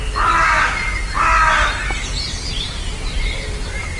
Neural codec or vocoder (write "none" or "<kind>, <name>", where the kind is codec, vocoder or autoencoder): none